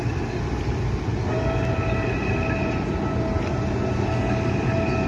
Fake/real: real